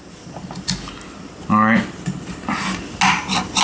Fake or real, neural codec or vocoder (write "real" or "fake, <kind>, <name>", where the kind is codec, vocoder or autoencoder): real